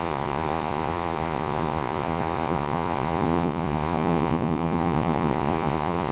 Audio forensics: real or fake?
fake